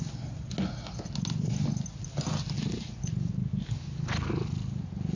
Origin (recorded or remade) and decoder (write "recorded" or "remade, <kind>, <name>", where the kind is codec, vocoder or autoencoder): recorded